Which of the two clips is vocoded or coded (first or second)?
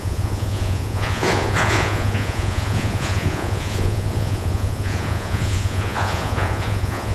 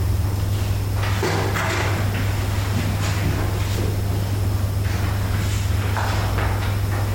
first